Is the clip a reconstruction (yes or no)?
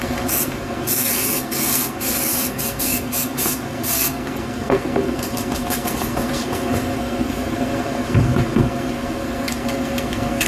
yes